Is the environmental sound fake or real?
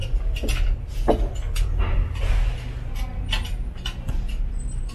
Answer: real